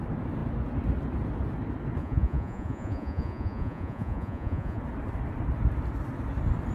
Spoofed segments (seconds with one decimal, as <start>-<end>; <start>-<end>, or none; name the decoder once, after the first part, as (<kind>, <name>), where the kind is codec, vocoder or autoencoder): 2.0-4.8 (vocoder, Vocos)